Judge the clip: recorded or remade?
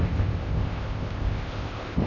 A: remade